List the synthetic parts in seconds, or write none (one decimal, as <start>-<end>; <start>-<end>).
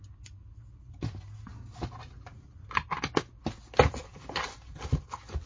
none